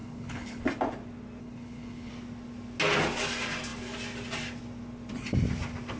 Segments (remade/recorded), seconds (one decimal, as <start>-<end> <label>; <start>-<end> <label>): 0.0-0.6 remade; 0.6-1.4 recorded; 1.4-2.1 remade; 2.1-6.0 recorded